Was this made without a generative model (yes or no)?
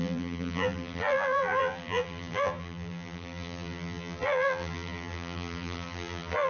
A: no